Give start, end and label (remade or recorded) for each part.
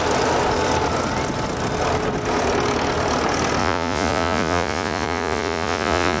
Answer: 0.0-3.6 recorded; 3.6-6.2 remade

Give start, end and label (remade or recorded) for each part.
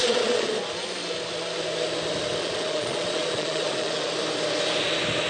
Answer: 0.0-0.5 remade; 0.5-2.4 recorded; 2.4-4.1 remade; 4.1-5.3 recorded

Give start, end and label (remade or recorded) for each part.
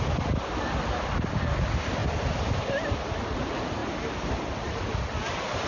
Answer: 0.0-5.7 recorded